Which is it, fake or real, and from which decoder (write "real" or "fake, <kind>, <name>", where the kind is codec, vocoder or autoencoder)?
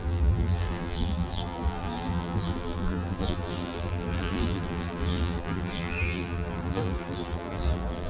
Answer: fake, vocoder, BigVGAN v2